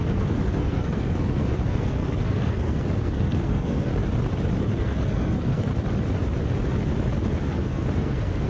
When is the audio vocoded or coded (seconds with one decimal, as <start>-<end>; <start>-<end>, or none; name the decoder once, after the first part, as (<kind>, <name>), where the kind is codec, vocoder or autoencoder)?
0.0-3.9 (codec, SNAC); 4.6-5.7; 7.4-8.5